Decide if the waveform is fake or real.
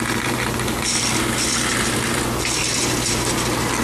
real